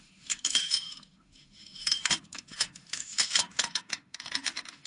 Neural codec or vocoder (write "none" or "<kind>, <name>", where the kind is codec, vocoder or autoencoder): autoencoder, DAC-VAE